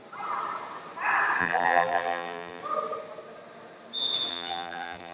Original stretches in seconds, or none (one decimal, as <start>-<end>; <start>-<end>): 0.0-1.4; 2.6-4.3